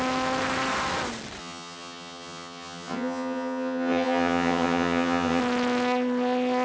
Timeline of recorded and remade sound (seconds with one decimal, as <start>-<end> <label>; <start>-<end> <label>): 0.0-1.4 recorded; 1.4-5.4 remade; 5.4-6.6 recorded